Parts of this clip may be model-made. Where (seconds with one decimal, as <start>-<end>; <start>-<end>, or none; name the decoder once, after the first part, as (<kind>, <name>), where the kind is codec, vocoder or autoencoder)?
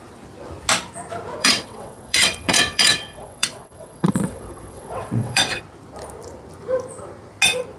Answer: 1.4-5.6 (vocoder, WaveNeXt)